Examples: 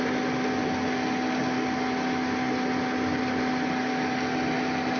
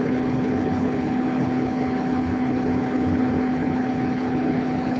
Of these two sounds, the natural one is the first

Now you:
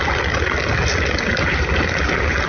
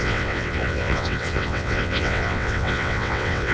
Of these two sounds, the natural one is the first